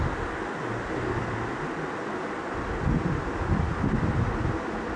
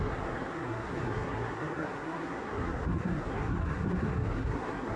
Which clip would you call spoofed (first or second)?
second